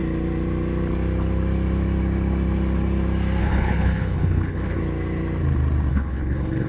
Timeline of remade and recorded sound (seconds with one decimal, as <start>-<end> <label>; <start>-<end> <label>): 0.0-3.4 recorded; 3.4-4.8 remade; 4.8-5.9 recorded; 5.9-6.7 remade